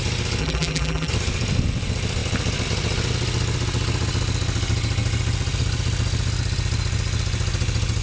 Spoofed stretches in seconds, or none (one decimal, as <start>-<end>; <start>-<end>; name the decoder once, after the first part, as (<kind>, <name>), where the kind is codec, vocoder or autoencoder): 0.4-1.1 (vocoder, BigVGAN v2)